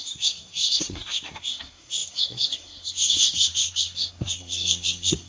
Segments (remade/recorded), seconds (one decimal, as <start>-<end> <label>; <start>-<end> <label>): 0.0-5.3 remade